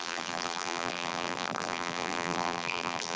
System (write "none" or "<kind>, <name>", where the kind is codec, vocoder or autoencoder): vocoder, BigVGAN v2